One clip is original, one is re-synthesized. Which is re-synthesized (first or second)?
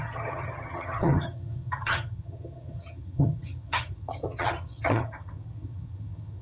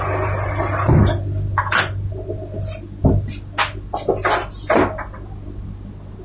first